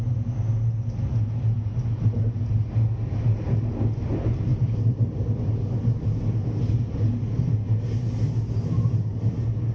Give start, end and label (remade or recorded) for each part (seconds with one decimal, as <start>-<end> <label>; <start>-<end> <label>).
0.0-4.5 recorded; 4.5-5.5 remade; 5.5-9.7 recorded